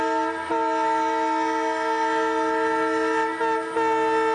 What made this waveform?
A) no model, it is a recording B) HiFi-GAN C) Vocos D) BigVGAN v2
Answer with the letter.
A